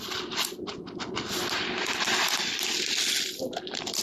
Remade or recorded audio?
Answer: recorded